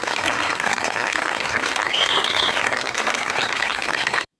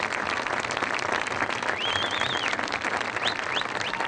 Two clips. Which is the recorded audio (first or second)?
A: second